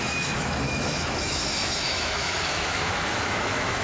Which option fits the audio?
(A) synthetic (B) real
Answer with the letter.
A